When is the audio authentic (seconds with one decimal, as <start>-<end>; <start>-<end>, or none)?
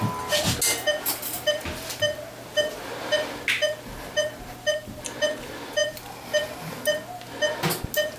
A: 0.0-8.2